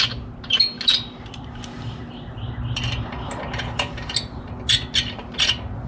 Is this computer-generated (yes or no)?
no